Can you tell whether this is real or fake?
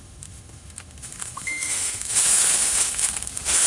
fake